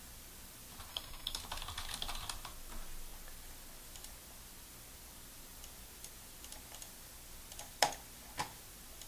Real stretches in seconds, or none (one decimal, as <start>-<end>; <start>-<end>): 0.0-0.9; 1.4-9.1